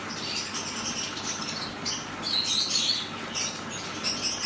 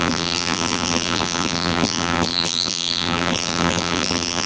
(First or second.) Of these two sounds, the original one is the first